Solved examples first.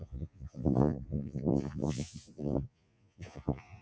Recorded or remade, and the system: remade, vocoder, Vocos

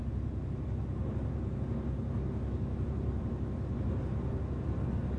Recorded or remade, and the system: recorded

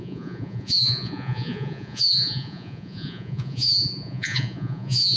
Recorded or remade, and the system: remade, vocoder, Vocos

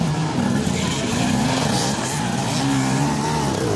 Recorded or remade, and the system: recorded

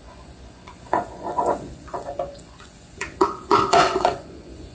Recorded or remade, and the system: remade, vocoder, Vocos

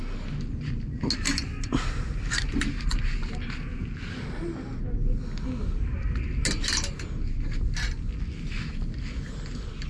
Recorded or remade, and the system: recorded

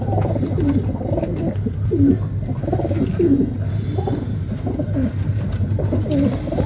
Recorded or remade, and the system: recorded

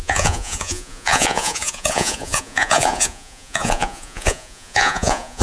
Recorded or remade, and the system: remade, vocoder, Vocos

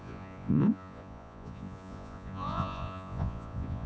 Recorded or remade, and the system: remade, vocoder, Vocos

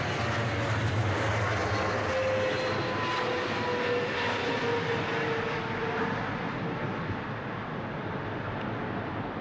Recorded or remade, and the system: recorded